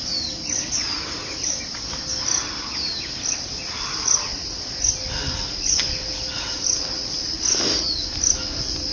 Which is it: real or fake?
real